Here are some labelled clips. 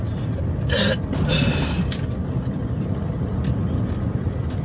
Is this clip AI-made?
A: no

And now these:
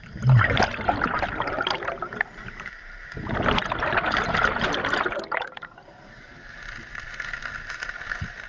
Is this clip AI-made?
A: no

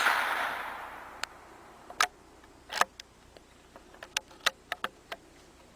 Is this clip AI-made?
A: no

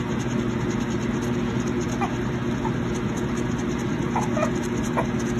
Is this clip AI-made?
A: no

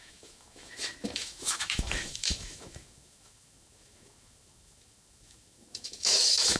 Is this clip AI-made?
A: yes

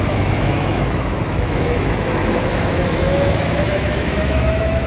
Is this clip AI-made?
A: yes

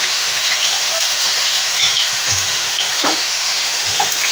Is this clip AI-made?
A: yes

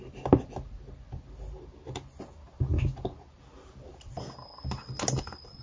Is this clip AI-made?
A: no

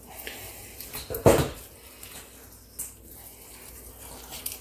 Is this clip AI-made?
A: no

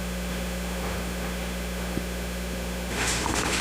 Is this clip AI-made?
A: yes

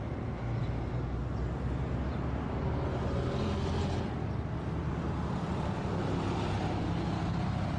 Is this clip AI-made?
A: no